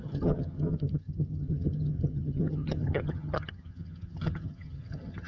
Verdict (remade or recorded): remade